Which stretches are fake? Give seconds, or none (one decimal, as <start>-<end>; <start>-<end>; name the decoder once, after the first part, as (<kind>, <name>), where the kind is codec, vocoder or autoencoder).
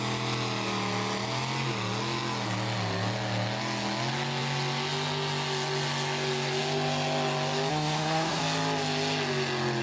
7.7-8.4 (codec, SNAC)